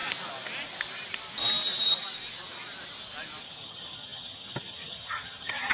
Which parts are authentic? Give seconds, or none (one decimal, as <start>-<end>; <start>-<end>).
0.0-3.4